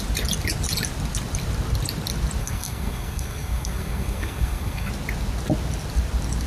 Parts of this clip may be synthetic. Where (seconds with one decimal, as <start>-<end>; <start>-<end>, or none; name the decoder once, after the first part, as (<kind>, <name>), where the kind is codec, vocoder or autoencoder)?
2.4-4.9 (codec, SNAC)